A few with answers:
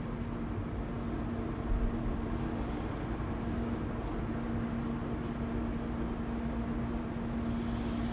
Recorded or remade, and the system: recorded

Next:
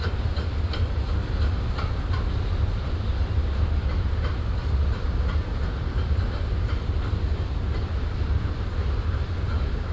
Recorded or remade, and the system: recorded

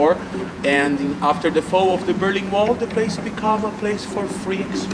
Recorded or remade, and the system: remade, vocoder, Vocos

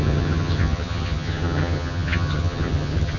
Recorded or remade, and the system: remade, vocoder, HiFi-GAN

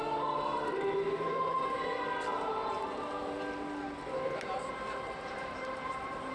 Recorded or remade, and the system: remade, vocoder, BigVGAN v2